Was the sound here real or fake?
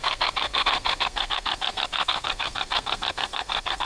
fake